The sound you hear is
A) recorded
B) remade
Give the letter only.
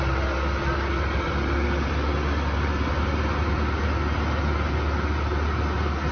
A